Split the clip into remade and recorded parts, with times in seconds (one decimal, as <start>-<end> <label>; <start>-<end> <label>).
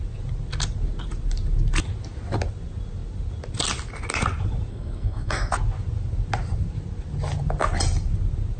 0.0-4.7 recorded; 4.7-5.5 remade; 5.5-8.6 recorded